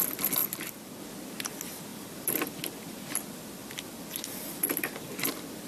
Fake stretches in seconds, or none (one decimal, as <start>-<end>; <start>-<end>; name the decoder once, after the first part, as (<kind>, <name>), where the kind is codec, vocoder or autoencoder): 0.4-1.0 (vocoder, BigVGAN v2); 1.9-5.3